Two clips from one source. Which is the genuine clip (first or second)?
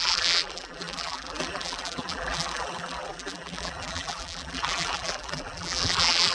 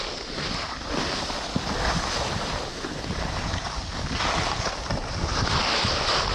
second